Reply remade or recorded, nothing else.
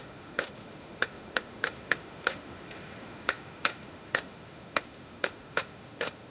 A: remade